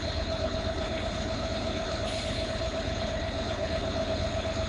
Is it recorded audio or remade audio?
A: remade